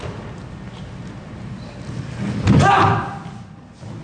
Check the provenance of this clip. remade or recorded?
recorded